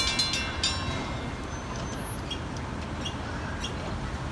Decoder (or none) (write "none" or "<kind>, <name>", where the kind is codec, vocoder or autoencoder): none